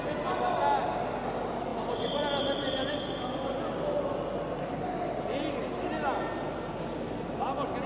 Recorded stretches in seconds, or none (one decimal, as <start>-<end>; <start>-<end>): 0.0-7.9